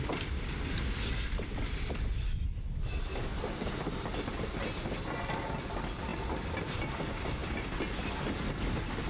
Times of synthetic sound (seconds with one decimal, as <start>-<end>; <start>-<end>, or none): none